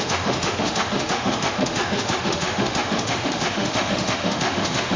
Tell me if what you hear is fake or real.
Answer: fake